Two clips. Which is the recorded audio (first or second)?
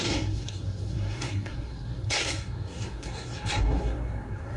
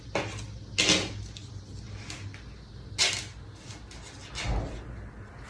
second